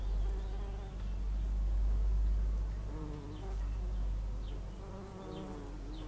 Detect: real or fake real